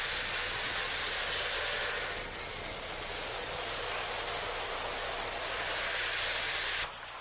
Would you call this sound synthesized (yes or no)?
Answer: no